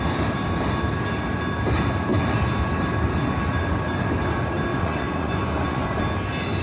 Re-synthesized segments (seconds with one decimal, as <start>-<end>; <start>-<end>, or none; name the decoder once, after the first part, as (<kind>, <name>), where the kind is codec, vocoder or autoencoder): 4.7-6.0 (vocoder, Vocos)